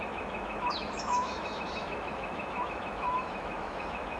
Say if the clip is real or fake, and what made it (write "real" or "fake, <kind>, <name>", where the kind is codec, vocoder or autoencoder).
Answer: fake, autoencoder, DAC-VAE